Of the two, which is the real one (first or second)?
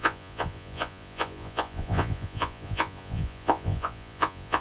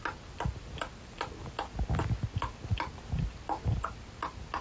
second